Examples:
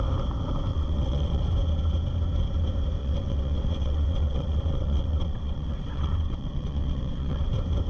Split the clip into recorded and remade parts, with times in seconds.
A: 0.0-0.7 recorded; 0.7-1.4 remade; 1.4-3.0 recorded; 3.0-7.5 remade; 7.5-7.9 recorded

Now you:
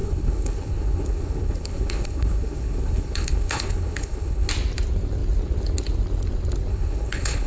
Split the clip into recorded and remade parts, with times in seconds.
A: 0.0-4.5 remade; 4.5-6.7 recorded; 6.7-7.5 remade

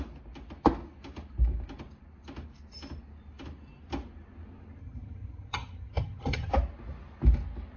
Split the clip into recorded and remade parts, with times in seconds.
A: 0.0-4.8 recorded; 4.8-6.5 remade; 6.5-7.8 recorded

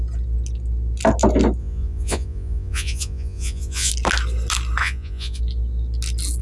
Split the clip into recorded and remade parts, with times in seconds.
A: 0.0-1.6 recorded; 1.6-3.9 remade; 3.9-4.8 recorded; 4.8-5.4 remade; 5.4-6.4 recorded

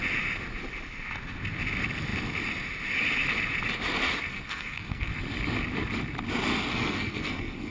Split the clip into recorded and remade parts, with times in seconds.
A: 0.0-4.3 recorded; 4.3-5.1 remade; 5.1-6.7 recorded; 6.7-7.7 remade

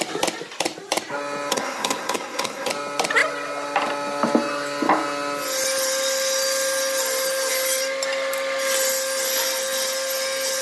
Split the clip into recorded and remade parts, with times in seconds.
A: 0.0-1.5 recorded; 1.5-2.7 remade; 2.7-10.6 recorded

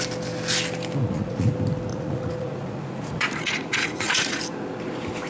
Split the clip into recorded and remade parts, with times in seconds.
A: 0.0-1.0 recorded; 1.0-1.5 remade; 1.5-1.9 recorded; 1.9-4.4 remade; 4.4-5.3 recorded